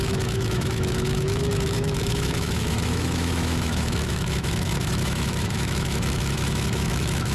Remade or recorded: remade